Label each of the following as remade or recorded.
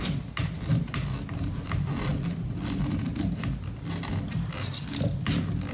recorded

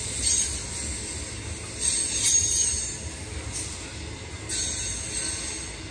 recorded